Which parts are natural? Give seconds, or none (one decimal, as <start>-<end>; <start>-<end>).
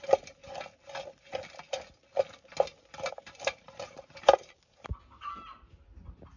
0.4-3.1; 4.9-6.4